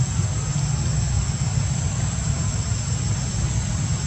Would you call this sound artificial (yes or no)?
no